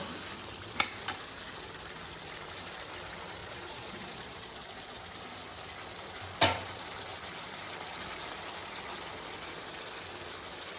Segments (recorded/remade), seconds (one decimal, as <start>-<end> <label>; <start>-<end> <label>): 0.0-3.4 recorded; 3.4-5.0 remade; 5.0-10.8 recorded